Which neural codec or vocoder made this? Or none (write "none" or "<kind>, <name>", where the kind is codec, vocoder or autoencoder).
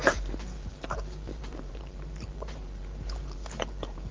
vocoder, BigVGAN v2